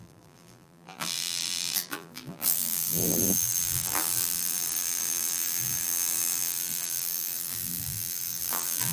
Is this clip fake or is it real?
fake